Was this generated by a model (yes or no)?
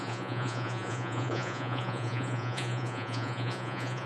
yes